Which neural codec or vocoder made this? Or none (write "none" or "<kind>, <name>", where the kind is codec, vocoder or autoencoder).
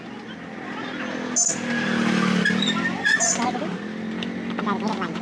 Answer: none